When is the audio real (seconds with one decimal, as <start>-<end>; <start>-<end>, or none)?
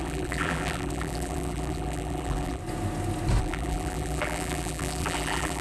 2.6-3.4